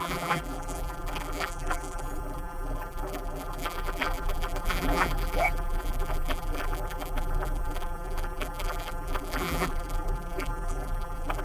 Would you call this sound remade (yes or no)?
yes